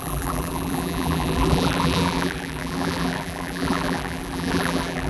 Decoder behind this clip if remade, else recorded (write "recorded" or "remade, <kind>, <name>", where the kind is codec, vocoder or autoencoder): remade, vocoder, BigVGAN v2